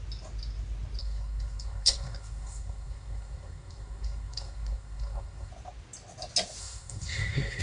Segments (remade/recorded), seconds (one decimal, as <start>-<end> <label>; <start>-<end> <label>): 0.0-1.0 recorded; 1.0-5.5 remade; 5.5-6.6 recorded; 6.6-7.6 remade